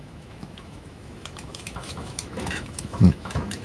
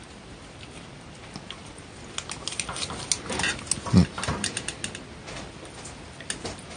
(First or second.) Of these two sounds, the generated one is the first